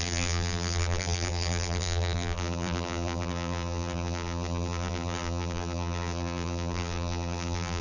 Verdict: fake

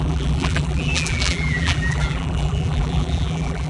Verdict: fake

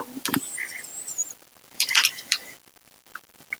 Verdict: fake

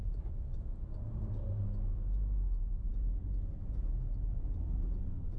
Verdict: fake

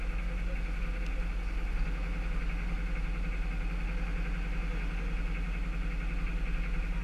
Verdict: real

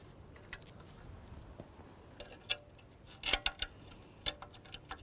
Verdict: real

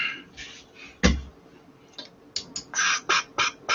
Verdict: real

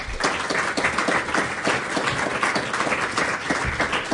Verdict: real